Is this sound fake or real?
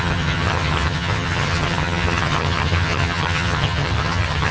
fake